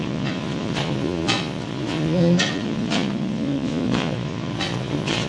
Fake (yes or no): yes